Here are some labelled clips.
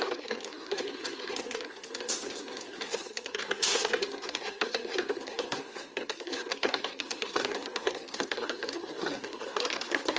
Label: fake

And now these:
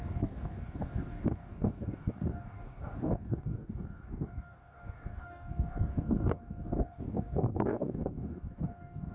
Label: fake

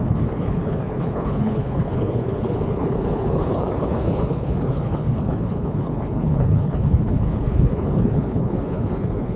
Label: fake